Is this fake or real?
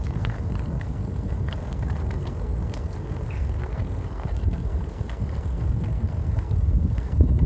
fake